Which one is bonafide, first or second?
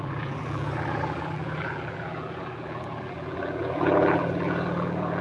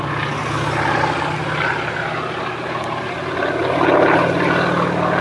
second